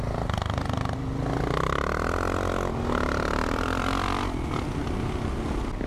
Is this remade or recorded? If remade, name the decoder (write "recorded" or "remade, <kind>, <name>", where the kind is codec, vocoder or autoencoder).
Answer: recorded